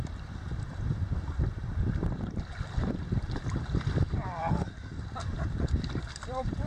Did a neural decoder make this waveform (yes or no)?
yes